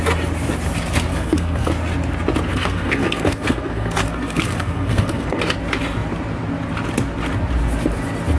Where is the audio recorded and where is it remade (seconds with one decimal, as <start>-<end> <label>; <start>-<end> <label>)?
0.0-1.1 recorded; 1.1-1.7 remade; 1.7-2.5 recorded; 2.5-5.4 remade; 5.4-8.4 recorded